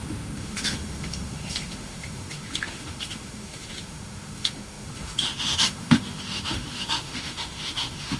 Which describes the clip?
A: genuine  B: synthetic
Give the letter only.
B